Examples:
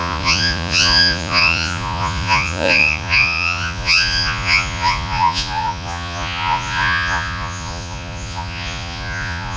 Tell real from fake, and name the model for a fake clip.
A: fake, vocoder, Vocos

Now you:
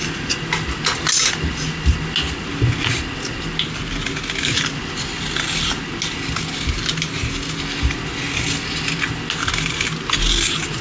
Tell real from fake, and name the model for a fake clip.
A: real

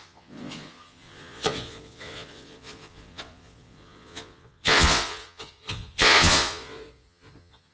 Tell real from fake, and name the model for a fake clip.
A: fake, vocoder, Vocos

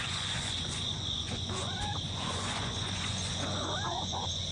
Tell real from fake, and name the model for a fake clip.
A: fake, vocoder, Vocos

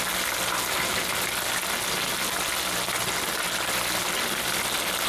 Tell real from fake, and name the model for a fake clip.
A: real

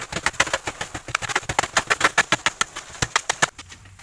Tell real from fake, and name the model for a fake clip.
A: real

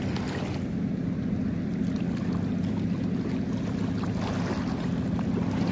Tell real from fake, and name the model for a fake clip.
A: real